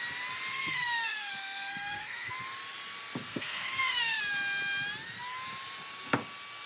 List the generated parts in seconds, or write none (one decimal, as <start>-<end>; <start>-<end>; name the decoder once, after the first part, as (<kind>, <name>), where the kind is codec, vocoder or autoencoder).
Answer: 0.5-2.3 (codec, SNAC); 3.3-4.2